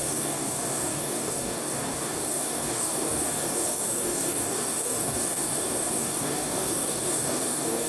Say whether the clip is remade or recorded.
remade